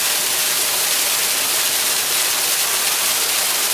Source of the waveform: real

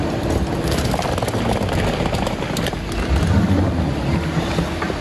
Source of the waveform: real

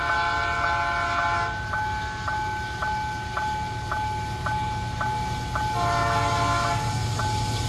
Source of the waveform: real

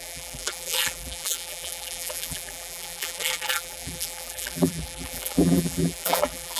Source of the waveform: fake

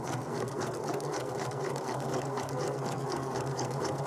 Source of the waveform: fake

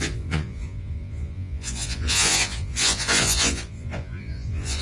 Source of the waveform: fake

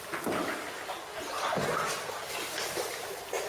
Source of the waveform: real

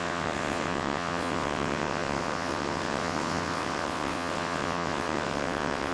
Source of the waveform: fake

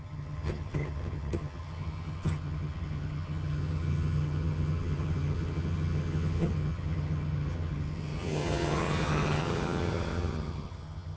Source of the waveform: fake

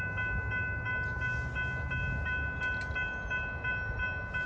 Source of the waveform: real